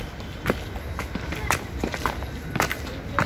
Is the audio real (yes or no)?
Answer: yes